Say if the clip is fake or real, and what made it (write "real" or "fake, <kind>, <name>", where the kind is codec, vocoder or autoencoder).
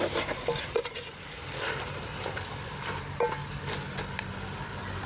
real